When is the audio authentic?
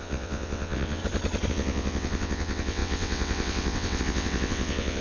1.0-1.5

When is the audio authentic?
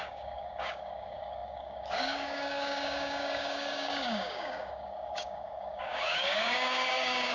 none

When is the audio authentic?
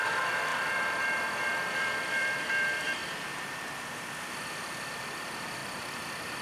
3.0-4.0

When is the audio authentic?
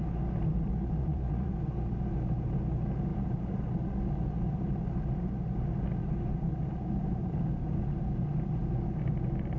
0.0-1.0; 1.5-9.6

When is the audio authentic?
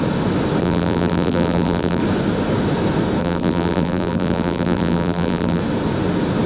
0.0-0.6; 2.0-3.2; 5.6-6.5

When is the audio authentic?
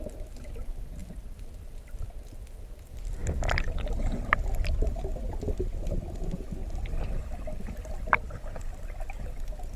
0.0-1.0; 1.6-6.6; 8.8-9.8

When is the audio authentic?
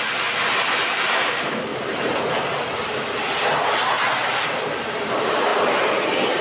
0.0-1.7; 2.3-5.5